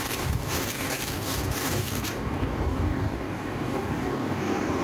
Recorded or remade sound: remade